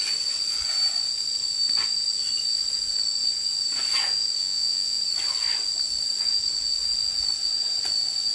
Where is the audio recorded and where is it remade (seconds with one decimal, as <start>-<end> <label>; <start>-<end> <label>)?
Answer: 0.0-4.4 recorded; 4.4-5.0 remade; 5.0-8.3 recorded